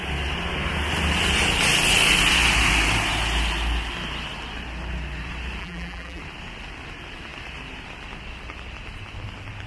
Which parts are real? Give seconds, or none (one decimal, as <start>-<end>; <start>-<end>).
0.0-5.6; 6.2-9.7